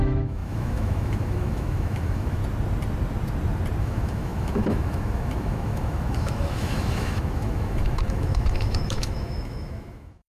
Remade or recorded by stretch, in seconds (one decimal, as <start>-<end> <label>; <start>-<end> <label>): 0.0-2.4 remade; 2.4-3.8 recorded; 3.8-10.4 remade